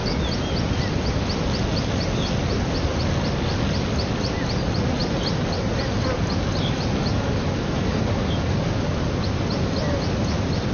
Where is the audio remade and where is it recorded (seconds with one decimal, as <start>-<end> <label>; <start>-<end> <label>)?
0.0-10.7 recorded